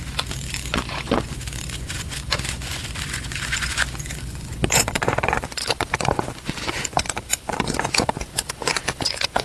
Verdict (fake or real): fake